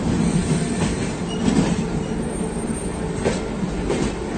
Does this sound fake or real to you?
real